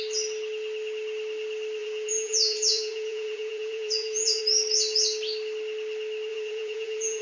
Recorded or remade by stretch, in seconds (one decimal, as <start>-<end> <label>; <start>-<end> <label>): 0.0-1.8 recorded; 1.8-4.4 remade; 4.4-6.3 recorded; 6.3-7.2 remade